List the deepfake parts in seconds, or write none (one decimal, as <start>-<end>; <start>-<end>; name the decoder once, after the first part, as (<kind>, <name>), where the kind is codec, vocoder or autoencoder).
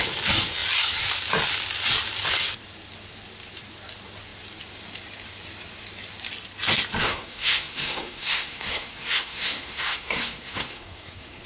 7.0-11.5 (codec, SNAC)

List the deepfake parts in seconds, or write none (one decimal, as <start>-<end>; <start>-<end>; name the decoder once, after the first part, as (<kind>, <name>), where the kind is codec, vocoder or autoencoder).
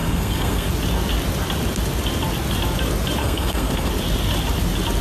0.0-0.7 (codec, SNAC); 3.2-3.9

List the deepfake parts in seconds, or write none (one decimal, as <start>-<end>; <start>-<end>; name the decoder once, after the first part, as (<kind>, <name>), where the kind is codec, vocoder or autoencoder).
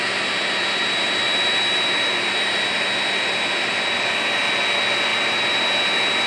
none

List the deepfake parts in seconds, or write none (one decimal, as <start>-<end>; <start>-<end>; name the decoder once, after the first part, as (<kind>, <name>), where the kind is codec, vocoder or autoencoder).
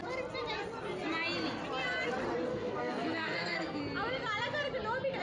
2.5-3.8 (codec, SNAC)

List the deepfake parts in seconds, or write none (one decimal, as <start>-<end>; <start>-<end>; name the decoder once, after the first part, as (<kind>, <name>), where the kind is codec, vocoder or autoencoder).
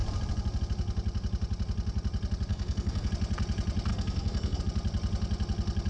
2.5-3.1 (codec, SNAC); 3.9-4.6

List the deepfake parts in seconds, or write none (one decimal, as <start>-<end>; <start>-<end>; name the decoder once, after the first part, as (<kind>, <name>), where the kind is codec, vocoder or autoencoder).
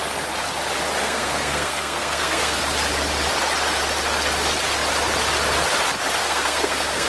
1.0-2.6 (codec, SNAC); 6.2-7.1